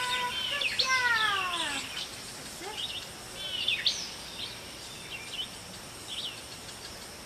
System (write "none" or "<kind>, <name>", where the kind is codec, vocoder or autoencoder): none